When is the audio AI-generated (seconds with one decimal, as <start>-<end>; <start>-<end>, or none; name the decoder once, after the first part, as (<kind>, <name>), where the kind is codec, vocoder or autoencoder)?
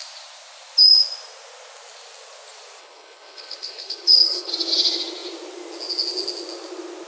2.8-4.5 (codec, HILCodec)